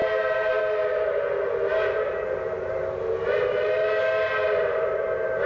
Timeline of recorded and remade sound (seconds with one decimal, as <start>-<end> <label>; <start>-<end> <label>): 0.0-0.6 remade; 0.6-5.5 recorded